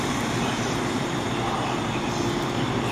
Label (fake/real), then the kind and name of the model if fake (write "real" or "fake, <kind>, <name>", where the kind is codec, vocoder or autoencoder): real